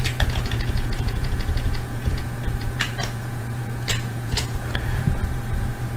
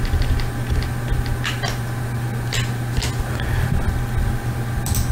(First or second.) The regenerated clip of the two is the first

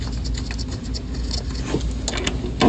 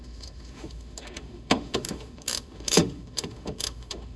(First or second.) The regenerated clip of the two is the second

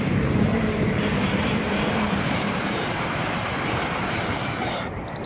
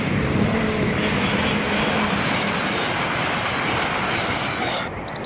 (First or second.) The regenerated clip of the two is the first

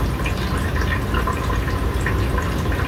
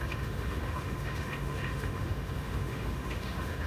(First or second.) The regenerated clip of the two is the second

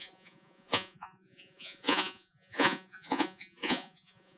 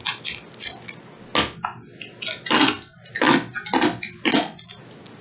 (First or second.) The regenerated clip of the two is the first